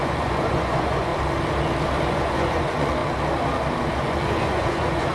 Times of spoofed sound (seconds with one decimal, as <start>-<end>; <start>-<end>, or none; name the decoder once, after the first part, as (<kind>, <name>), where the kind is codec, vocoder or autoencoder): 0.0-1.1 (vocoder, Vocos); 2.1-3.0; 3.9-5.1